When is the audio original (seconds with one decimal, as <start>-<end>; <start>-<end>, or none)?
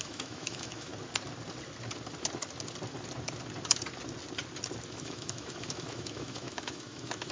0.9-4.9